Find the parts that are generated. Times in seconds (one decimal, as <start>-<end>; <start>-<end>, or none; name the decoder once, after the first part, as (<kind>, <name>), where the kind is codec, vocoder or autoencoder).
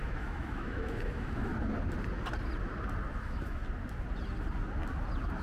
0.0-1.5 (autoencoder, DAC-VAE); 3.2-3.6